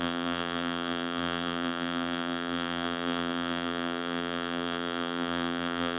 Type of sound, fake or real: fake